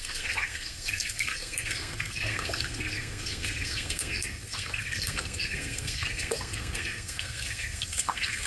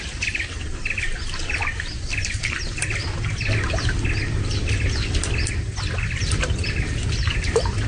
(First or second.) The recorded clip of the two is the second